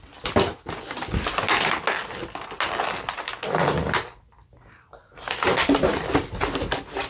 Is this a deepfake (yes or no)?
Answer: no